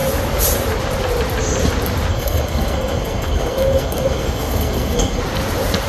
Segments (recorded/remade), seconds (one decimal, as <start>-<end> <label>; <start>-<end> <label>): 0.0-2.1 recorded; 2.1-5.2 remade; 5.2-5.9 recorded